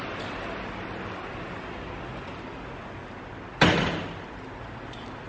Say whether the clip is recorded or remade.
recorded